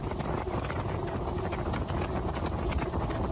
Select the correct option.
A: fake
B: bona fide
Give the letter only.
B